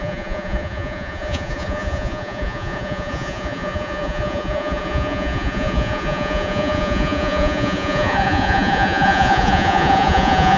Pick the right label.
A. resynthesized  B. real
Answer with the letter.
A